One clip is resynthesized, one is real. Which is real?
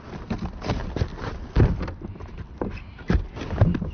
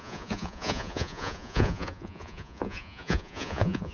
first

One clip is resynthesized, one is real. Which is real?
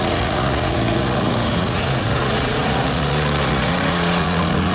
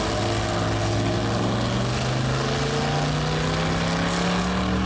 second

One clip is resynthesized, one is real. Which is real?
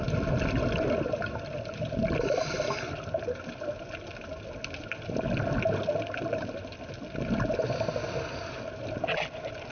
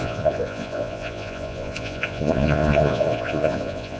first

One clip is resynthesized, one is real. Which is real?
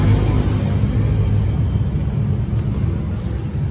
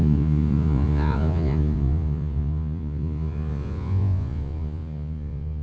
first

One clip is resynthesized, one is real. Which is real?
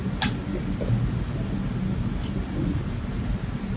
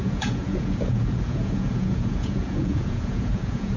first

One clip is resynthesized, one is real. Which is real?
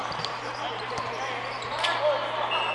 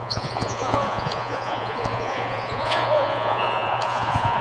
first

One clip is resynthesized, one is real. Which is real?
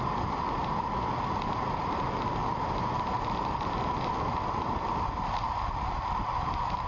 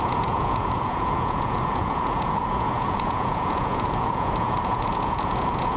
first